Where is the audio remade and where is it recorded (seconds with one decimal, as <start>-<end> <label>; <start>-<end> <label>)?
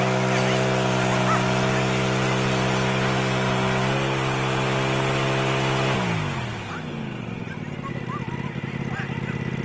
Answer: 0.0-9.6 recorded